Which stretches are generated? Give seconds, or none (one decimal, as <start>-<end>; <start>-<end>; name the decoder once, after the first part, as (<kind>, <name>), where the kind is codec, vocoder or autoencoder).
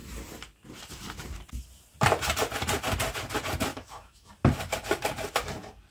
3.7-4.3 (autoencoder, DAC-VAE)